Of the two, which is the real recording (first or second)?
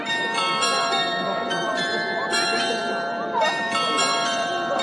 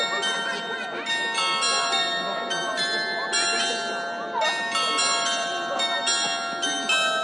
second